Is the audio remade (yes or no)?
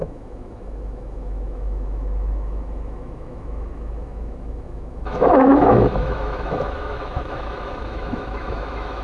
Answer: yes